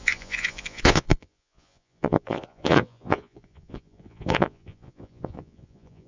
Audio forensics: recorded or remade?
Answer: remade